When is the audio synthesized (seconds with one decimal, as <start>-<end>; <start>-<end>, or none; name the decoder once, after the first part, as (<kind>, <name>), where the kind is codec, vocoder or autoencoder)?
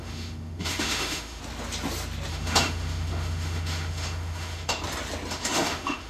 0.0-1.4 (autoencoder, DAC-VAE); 2.3-4.8; 5.3-6.1